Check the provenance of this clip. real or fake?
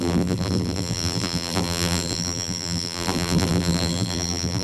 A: fake